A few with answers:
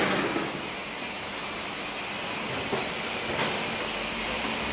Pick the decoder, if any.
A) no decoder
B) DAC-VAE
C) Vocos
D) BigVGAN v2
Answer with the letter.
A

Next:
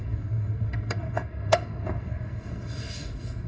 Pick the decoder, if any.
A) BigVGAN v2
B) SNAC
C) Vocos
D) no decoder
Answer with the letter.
B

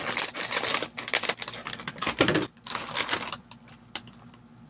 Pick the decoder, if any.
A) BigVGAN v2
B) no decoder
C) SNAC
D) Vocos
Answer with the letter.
A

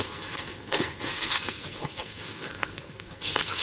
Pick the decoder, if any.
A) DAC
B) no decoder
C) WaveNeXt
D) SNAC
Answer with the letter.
D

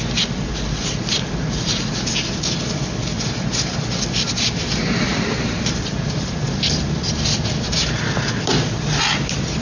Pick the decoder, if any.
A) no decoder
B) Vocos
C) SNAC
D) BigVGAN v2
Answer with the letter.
D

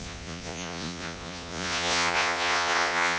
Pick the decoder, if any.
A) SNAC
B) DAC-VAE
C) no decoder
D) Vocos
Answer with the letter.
D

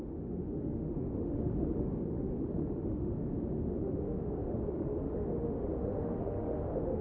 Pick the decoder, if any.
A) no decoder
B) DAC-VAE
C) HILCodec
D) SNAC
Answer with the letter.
B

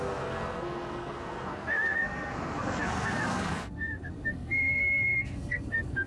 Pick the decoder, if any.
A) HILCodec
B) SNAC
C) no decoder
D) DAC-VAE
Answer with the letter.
B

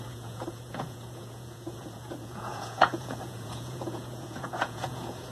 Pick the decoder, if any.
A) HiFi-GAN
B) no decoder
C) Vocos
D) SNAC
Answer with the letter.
C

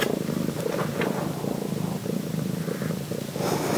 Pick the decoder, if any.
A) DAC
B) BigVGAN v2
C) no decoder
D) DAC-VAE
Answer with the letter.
C